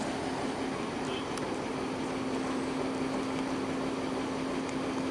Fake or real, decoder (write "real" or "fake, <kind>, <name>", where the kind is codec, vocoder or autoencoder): real